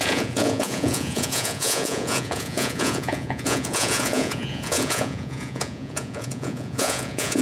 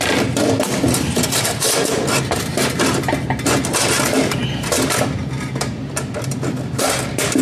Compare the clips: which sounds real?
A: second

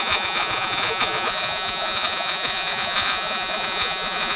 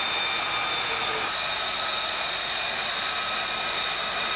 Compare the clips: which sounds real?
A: second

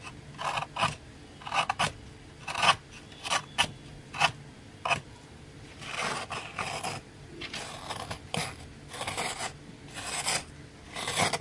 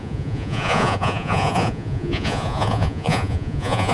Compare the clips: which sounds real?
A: first